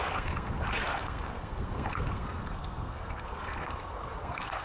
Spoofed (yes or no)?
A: yes